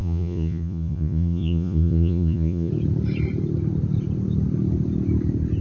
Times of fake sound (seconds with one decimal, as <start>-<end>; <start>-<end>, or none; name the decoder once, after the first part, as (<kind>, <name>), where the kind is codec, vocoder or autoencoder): 0.0-2.7 (vocoder, Vocos)